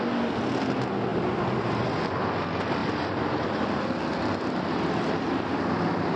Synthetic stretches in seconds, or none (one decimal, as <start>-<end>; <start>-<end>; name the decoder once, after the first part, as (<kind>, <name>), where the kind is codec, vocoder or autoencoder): 1.1-2.0 (vocoder, BigVGAN v2); 2.8-3.8